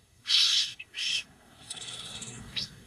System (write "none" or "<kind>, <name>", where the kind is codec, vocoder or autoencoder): codec, SNAC